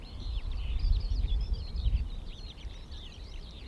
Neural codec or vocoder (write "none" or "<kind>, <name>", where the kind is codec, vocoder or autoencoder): vocoder, BigVGAN v2